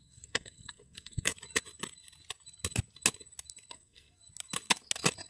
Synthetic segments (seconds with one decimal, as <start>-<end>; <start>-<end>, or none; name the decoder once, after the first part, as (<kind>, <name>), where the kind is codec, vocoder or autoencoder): 0.0-1.3 (codec, SNAC); 3.7-4.2